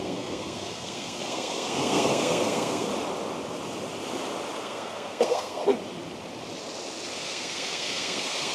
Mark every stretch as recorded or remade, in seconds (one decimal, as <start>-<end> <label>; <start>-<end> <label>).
0.0-2.9 remade; 2.9-4.6 recorded; 4.6-5.6 remade; 5.6-7.2 recorded; 7.2-8.5 remade